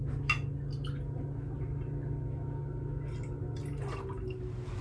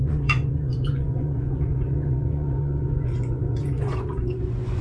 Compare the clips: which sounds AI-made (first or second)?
second